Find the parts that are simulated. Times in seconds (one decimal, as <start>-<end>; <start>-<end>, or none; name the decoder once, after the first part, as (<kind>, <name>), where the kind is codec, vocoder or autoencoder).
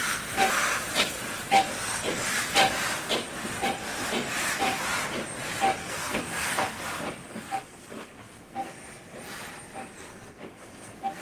0.0-0.5 (codec, SNAC); 5.8-6.8; 7.2-8.7; 9.8-11.2